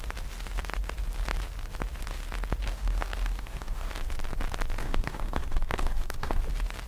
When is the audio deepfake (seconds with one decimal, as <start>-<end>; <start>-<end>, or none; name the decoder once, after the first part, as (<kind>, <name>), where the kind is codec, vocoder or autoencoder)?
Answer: 2.6-3.9 (codec, DAC); 4.8-6.4